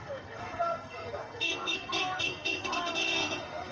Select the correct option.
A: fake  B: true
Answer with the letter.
A